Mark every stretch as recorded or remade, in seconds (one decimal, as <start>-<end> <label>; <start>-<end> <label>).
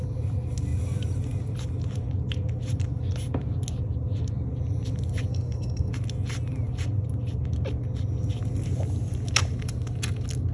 0.0-5.3 recorded; 5.3-5.9 remade; 5.9-10.5 recorded